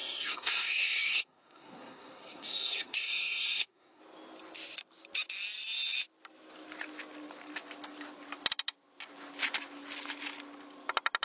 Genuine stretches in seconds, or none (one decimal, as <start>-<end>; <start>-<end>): 4.0-11.2